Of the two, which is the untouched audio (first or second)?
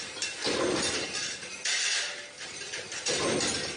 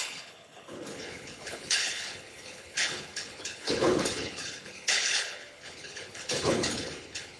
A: first